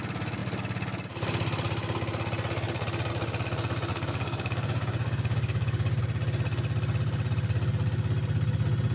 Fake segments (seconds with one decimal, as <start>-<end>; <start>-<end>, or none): 3.9-6.0